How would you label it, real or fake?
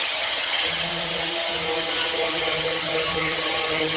fake